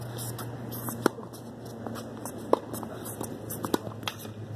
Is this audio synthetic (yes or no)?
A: no